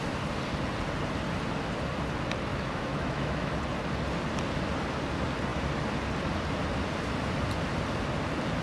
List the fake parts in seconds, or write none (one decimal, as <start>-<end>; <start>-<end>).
2.5-3.5